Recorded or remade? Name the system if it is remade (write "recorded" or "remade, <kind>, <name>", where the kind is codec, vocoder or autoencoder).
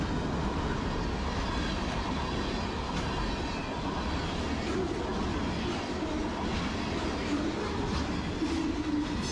recorded